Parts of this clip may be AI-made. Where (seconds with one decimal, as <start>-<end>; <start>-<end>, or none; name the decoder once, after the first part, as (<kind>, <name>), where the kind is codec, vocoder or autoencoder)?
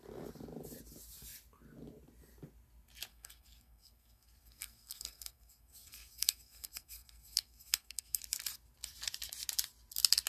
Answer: 3.1-8.2 (codec, SNAC)